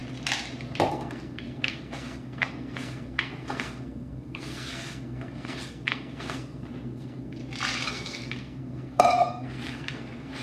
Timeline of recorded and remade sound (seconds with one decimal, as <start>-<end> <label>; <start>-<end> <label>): 0.0-0.9 recorded; 0.9-7.4 remade; 7.4-7.9 recorded; 7.9-10.4 remade